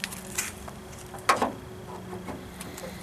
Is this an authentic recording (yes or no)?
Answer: yes